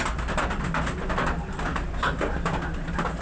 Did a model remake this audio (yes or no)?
no